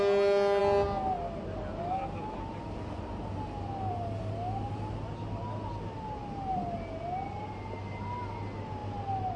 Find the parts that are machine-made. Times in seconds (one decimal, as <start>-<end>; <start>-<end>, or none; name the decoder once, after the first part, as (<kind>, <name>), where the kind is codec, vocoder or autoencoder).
none